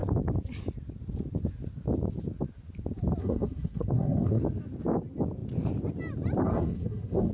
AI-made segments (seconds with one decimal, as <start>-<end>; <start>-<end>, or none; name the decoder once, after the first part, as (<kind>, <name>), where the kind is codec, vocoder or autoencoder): 3.2-4.4 (codec, SNAC); 6.4-7.3